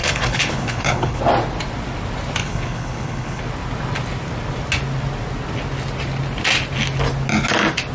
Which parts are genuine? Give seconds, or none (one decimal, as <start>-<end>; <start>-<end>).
1.2-2.4; 3.4-7.9